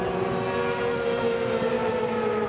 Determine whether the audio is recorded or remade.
recorded